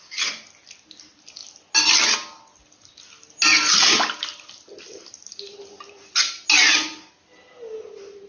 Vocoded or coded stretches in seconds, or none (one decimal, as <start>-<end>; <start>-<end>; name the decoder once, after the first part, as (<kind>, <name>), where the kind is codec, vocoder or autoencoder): none